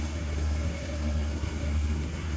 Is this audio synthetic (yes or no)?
yes